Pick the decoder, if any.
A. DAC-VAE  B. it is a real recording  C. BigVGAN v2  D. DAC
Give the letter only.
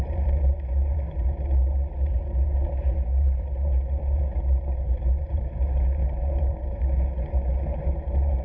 C